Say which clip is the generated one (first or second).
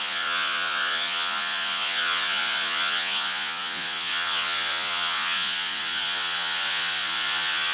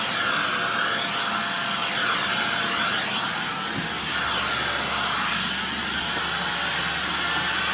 first